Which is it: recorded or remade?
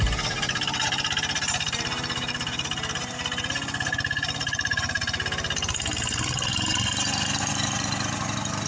recorded